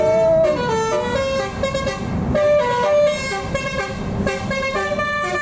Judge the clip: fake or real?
real